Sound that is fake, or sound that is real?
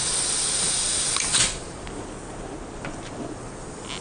real